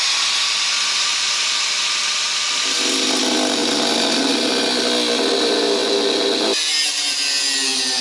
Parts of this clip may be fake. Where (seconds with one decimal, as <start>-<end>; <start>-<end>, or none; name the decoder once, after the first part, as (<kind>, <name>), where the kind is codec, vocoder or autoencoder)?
none